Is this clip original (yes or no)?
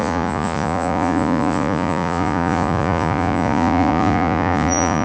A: no